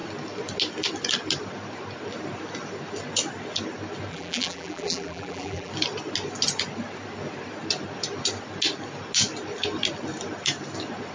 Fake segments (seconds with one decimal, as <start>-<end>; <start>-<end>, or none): 4.1-5.7